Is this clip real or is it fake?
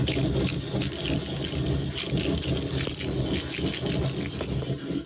real